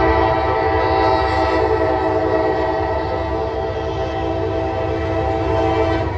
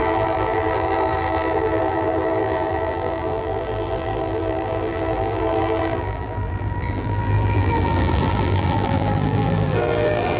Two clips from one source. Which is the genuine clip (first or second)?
first